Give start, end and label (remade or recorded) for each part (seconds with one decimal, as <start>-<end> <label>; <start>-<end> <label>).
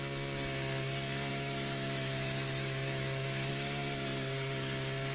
0.0-1.3 recorded; 1.3-3.5 remade; 3.5-5.1 recorded